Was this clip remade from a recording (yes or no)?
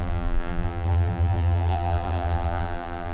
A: yes